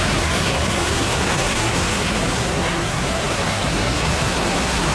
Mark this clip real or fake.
fake